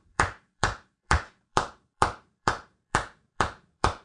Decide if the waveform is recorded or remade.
remade